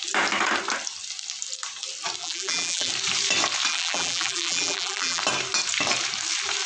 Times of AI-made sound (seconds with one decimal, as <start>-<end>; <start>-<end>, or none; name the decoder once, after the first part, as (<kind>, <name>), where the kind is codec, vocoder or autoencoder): 2.2-2.9 (vocoder, BigVGAN v2); 3.7-5.2